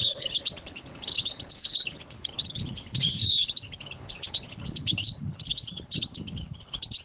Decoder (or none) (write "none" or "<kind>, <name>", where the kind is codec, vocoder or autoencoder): codec, HILCodec